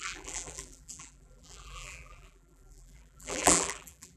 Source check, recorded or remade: remade